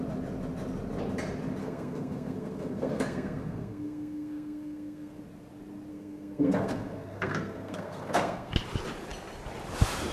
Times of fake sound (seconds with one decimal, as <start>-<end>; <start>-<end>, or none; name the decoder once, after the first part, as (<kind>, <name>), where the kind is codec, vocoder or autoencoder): 1.6-5.2 (codec, SNAC); 5.9-8.5